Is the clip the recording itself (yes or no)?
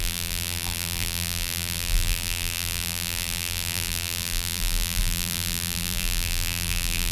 no